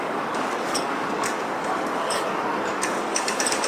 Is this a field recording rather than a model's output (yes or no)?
no